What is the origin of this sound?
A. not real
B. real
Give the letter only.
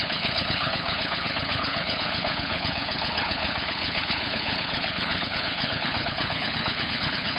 A